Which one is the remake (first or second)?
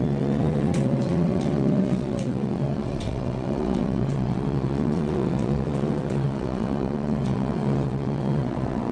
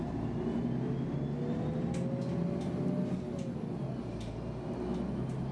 first